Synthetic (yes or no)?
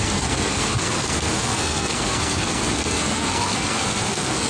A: yes